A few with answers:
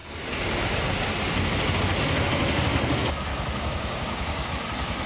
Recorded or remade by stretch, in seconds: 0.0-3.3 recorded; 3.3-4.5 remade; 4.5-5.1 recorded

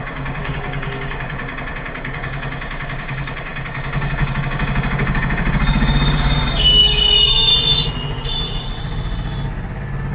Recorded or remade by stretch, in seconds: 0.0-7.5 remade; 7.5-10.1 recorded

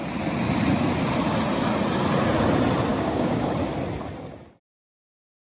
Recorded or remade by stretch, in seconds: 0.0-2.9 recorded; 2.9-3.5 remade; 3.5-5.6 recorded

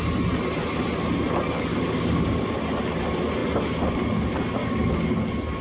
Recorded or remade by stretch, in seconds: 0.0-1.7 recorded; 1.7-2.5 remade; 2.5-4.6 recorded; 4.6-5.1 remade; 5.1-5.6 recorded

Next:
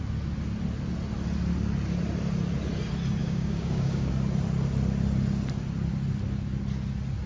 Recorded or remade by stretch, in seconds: 0.0-3.2 recorded; 3.2-4.1 remade; 4.1-7.3 recorded